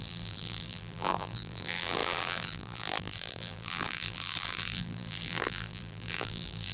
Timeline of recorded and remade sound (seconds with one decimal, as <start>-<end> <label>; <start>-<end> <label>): 0.0-6.7 remade